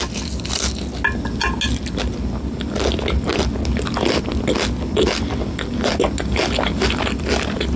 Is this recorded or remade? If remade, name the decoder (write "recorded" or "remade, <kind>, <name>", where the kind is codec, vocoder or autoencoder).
recorded